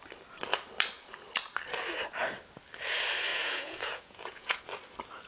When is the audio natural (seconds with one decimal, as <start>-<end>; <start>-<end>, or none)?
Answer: 0.0-3.3; 4.6-5.3